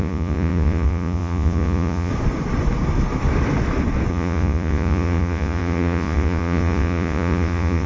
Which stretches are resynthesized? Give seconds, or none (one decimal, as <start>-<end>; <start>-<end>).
0.0-2.1; 4.1-7.9